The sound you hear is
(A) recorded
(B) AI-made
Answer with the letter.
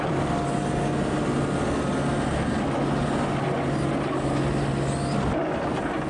A